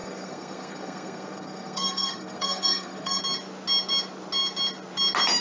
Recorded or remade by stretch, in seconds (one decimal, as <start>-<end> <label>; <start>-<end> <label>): 0.0-3.2 remade; 3.2-5.4 recorded